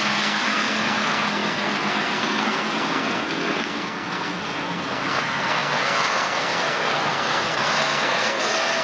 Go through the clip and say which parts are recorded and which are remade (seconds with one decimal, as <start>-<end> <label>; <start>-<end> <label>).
0.0-8.8 remade